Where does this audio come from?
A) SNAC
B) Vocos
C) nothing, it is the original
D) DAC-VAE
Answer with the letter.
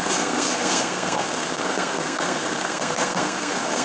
A